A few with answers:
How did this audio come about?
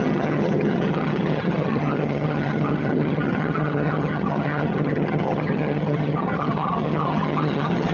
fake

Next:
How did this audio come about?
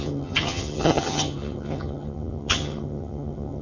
fake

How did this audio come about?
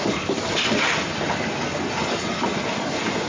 real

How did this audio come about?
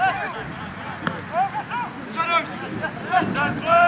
real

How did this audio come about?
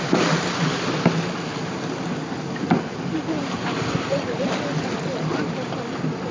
real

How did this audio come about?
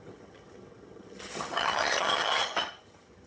fake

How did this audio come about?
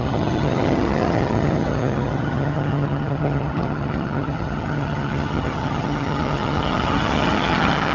fake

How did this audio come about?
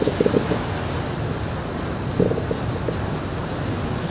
real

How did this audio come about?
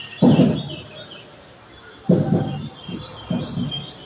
real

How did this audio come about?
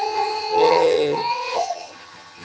fake